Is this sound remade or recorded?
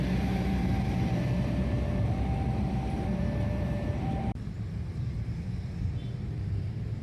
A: remade